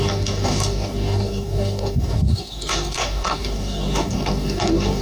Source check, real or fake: fake